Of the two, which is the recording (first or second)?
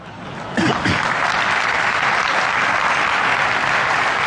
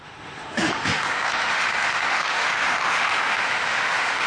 first